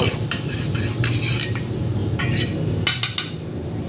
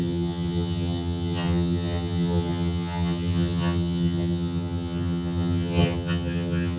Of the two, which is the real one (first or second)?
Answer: first